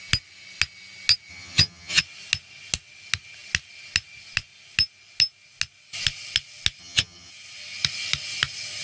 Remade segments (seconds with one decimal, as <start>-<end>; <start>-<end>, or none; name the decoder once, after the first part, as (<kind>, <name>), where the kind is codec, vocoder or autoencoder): 1.3-2.0 (vocoder, HiFi-GAN); 6.8-7.3

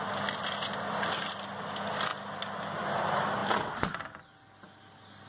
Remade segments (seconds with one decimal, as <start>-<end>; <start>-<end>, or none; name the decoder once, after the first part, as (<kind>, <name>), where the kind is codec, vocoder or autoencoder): none

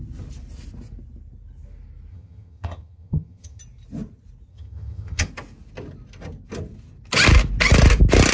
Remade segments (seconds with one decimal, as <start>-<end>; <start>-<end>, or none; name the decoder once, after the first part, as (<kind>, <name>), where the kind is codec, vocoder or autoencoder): 2.1-3.6 (vocoder, HiFi-GAN); 4.5-5.3

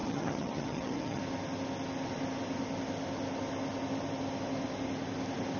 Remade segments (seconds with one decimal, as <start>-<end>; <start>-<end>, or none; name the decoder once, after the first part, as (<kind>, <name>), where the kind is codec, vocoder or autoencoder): 0.0-1.2 (vocoder, HiFi-GAN)

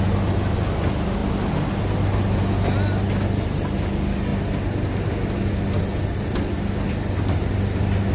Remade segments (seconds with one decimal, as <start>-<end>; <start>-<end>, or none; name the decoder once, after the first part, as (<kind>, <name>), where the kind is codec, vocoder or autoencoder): none

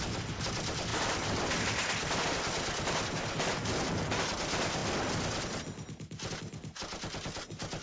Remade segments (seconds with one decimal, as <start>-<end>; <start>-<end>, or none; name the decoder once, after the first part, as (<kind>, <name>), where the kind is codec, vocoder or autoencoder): none